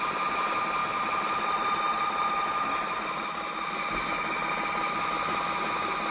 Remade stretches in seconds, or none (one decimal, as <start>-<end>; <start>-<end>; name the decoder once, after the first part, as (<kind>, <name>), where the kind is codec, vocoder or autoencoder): 0.8-4.5 (vocoder, BigVGAN v2)